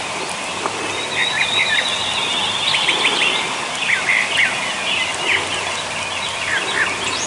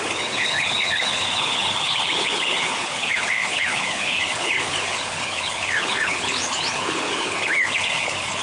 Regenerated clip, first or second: second